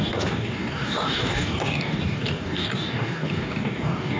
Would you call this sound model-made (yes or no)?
yes